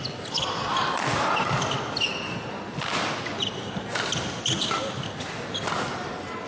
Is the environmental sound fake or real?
real